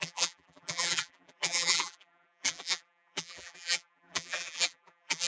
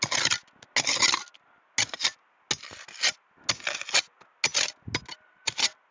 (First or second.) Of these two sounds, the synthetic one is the first